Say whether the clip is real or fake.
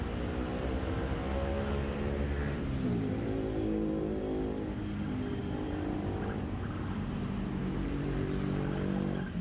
real